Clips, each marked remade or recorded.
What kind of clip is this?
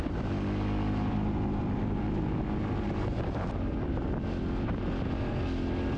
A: recorded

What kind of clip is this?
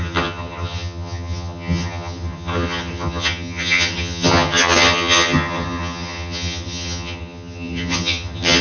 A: remade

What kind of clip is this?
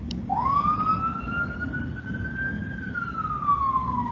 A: recorded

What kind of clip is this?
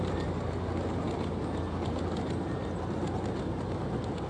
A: recorded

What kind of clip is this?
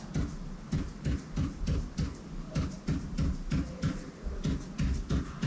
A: recorded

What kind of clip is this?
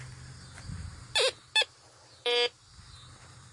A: recorded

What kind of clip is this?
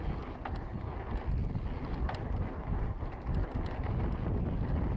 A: recorded